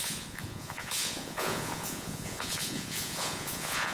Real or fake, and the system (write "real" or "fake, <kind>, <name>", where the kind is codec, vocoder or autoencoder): fake, vocoder, Vocos